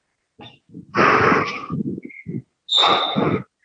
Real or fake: real